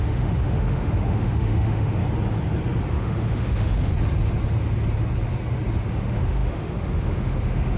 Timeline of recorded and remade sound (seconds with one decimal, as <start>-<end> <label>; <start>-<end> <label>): 0.0-2.0 remade; 2.0-2.9 recorded; 2.9-3.9 remade; 3.9-5.9 recorded; 5.9-7.8 remade